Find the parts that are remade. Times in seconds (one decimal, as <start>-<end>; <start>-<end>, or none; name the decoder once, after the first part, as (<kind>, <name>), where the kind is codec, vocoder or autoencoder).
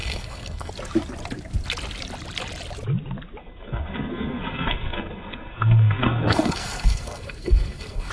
0.0-0.7 (codec, SNAC); 3.4-8.1